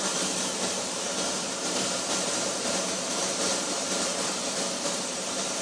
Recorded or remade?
remade